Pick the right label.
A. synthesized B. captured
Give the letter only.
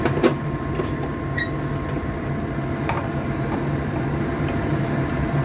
A